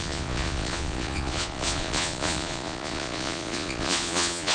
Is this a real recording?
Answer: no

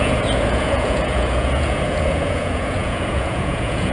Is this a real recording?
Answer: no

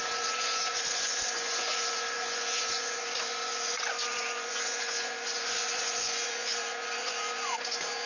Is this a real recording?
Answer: no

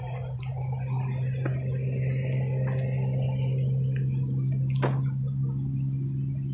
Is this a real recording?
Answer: yes